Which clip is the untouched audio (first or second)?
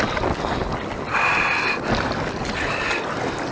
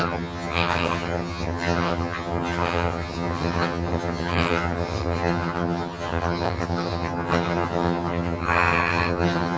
first